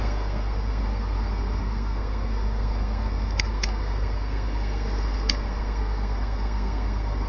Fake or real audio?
fake